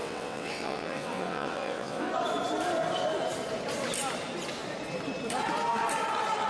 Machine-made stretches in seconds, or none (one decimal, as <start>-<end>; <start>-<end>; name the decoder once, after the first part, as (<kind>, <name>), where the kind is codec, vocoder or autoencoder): 0.0-2.1 (vocoder, WaveNeXt)